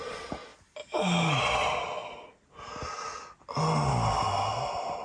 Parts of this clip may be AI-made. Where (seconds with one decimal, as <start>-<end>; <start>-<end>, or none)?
none